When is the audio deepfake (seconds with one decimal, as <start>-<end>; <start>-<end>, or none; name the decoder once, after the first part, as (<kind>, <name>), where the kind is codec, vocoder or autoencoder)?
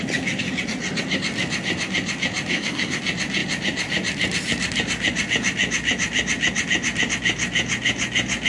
2.5-3.0 (codec, SNAC)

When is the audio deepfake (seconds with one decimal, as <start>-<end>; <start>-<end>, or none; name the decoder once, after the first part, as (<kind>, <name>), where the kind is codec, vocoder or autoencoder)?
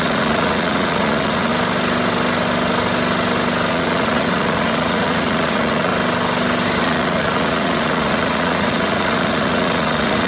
0.0-1.5 (vocoder, Vocos); 3.7-5.9; 6.8-10.3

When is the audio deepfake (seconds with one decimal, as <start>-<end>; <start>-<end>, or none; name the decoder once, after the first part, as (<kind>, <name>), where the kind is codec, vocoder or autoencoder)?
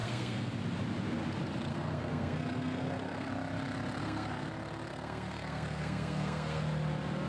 0.0-0.5 (codec, SNAC); 1.7-3.3; 4.0-4.5; 4.9-6.6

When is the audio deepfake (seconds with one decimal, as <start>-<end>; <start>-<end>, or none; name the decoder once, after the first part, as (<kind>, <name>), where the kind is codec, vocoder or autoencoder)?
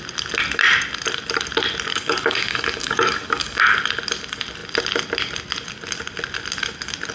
1.9-3.6 (codec, DAC)